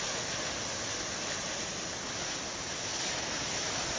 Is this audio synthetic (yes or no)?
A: no